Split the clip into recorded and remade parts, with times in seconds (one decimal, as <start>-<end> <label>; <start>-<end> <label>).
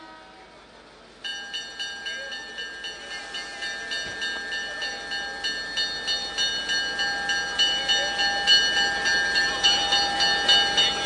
0.0-11.1 recorded